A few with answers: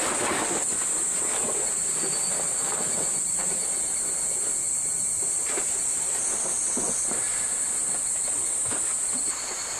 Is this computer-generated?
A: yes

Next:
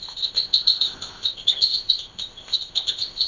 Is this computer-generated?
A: yes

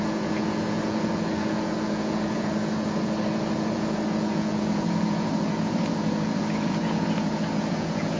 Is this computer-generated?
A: yes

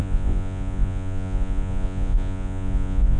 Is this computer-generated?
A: yes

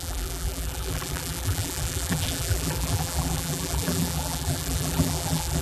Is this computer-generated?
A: yes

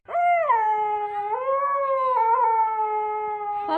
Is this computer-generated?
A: no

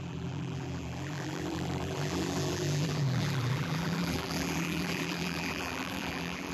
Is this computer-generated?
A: yes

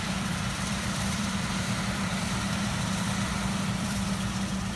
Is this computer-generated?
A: yes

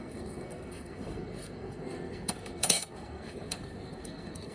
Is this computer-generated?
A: yes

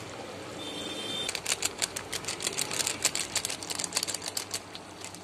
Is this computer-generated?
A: no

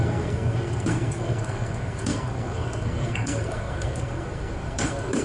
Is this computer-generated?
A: yes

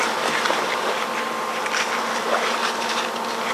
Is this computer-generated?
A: no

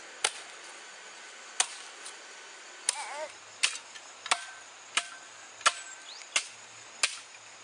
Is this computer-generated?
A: no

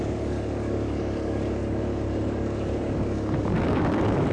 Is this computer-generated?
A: yes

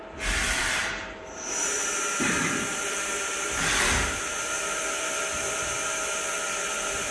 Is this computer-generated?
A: yes